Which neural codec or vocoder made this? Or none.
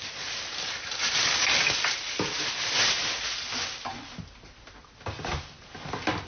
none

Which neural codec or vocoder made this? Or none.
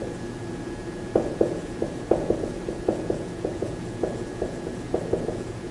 vocoder, Vocos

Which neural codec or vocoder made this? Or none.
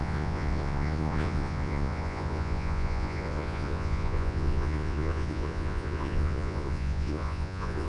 vocoder, Vocos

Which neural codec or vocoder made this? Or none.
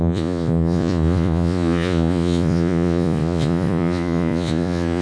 vocoder, Vocos